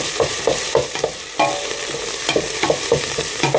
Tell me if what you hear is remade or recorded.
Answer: remade